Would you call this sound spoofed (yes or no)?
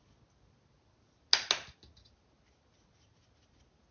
no